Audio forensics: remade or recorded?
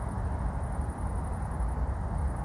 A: recorded